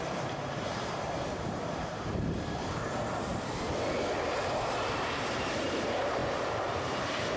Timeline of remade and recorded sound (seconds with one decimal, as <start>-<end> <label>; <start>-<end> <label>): 0.0-3.3 remade; 3.3-5.3 recorded; 5.3-7.4 remade